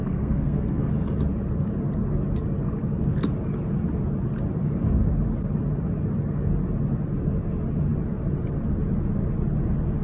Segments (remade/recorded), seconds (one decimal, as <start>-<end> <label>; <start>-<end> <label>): 0.0-0.9 remade; 0.9-10.0 recorded